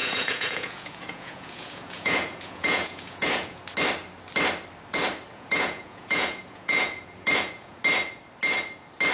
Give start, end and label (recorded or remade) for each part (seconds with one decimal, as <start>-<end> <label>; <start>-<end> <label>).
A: 0.0-3.6 remade; 3.6-5.3 recorded; 5.3-7.8 remade; 7.8-9.1 recorded